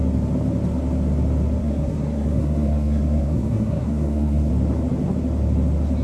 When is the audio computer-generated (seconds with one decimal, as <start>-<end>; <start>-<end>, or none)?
1.6-4.5